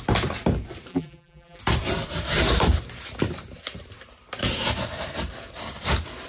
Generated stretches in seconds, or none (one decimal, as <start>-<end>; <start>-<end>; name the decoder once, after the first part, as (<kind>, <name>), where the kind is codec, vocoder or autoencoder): 0.9-1.6 (vocoder, BigVGAN v2)